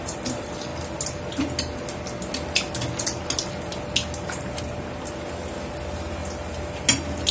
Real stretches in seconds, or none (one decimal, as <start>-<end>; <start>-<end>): 0.0-7.3